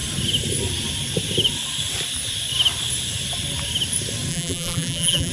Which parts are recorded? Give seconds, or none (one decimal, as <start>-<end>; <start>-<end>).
0.0-4.3